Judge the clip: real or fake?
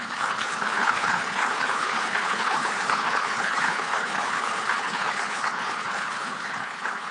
fake